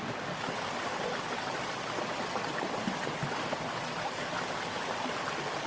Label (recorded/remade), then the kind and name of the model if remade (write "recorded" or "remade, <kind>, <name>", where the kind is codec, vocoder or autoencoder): recorded